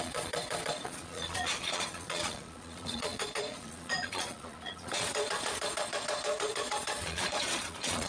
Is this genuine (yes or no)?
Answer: no